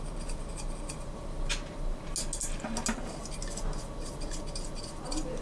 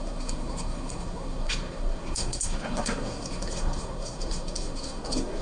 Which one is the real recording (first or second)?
first